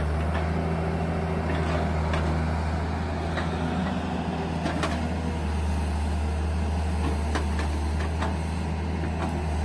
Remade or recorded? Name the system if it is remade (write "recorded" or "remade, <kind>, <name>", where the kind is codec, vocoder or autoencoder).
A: recorded